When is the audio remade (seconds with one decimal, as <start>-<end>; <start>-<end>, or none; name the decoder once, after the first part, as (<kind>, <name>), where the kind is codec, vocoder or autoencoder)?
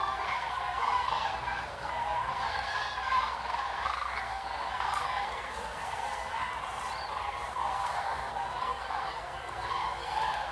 0.0-6.5 (codec, SNAC); 7.1-10.5